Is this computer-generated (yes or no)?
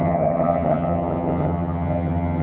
yes